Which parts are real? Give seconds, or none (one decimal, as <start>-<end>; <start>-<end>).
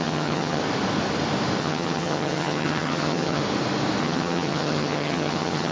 0.6-1.6; 3.4-4.0